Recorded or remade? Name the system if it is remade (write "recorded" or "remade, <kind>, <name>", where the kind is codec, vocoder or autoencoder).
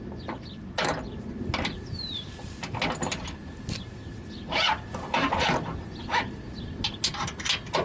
recorded